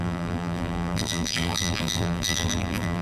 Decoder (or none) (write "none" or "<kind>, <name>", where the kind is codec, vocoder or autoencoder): vocoder, BigVGAN v2